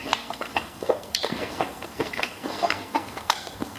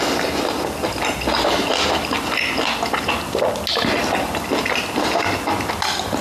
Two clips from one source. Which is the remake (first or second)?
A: first